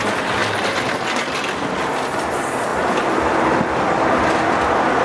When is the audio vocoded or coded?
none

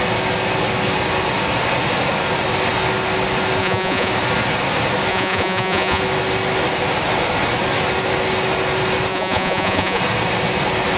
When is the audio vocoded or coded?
3.6-4.1 (vocoder, Vocos); 5.1-6.0; 9.1-10.0

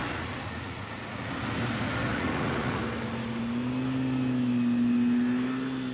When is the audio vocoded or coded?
0.0-1.3 (vocoder, Vocos); 2.1-2.8

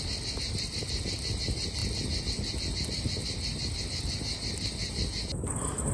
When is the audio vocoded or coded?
none